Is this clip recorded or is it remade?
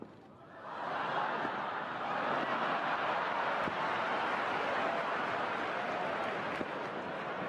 recorded